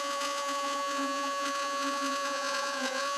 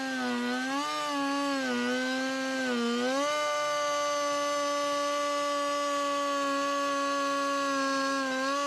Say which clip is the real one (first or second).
second